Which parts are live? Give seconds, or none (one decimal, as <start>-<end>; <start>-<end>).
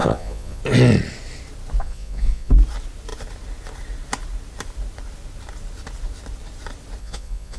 0.6-1.8; 2.5-7.0